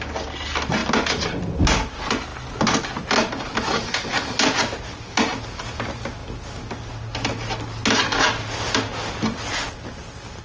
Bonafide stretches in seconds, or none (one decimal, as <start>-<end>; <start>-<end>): 0.0-10.4